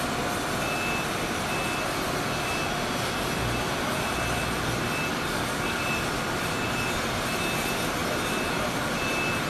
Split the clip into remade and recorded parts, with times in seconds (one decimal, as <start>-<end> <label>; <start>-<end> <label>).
0.0-5.1 recorded; 5.1-5.8 remade; 5.8-9.5 recorded